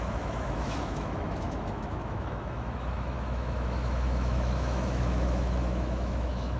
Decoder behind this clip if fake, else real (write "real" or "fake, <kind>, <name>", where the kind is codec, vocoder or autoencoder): fake, autoencoder, DAC-VAE